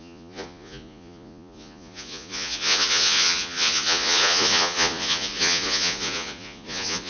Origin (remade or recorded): remade